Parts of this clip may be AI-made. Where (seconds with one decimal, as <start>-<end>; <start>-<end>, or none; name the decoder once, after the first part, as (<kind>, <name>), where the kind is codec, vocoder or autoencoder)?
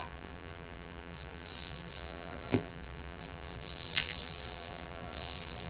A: 0.0-5.7 (vocoder, BigVGAN v2)